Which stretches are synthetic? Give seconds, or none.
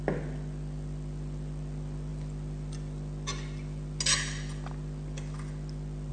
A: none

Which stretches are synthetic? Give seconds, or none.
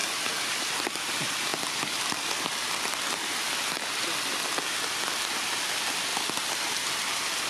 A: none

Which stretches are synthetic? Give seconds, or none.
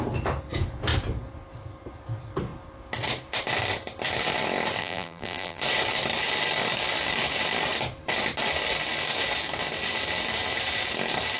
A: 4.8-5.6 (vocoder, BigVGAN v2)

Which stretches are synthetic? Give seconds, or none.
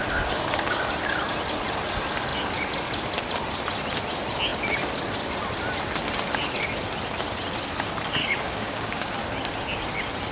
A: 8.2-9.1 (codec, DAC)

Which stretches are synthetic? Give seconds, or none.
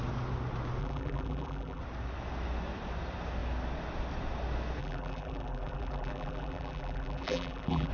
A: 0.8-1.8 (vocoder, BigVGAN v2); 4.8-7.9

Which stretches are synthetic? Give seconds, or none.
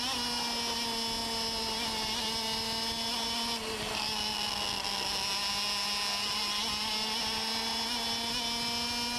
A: none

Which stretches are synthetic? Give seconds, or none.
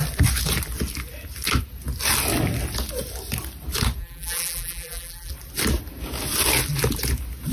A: 4.0-5.3 (vocoder, BigVGAN v2)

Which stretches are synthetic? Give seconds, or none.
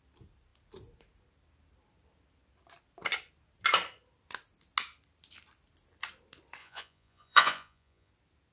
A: 6.6-8.1 (vocoder, Vocos)